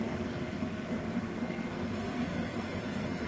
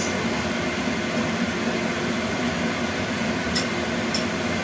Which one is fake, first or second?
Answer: first